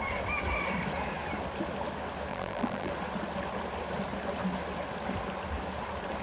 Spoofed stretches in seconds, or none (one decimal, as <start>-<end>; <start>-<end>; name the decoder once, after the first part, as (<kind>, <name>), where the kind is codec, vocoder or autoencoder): 2.3-2.9 (vocoder, BigVGAN v2)